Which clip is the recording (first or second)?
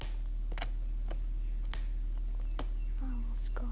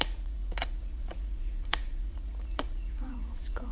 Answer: first